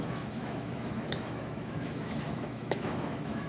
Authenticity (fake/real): fake